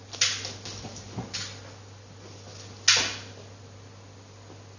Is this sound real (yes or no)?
yes